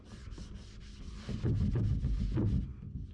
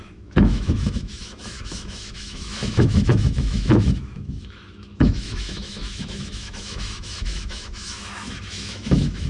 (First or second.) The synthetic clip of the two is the second